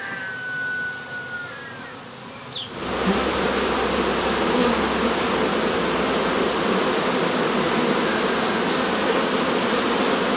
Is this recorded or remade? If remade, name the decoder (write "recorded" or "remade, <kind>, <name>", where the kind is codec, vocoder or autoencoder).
recorded